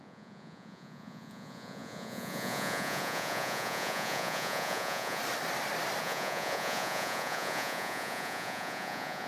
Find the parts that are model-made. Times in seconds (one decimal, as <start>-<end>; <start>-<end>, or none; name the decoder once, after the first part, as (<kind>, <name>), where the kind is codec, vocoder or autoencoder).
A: 0.0-5.2 (vocoder, Vocos); 6.0-9.3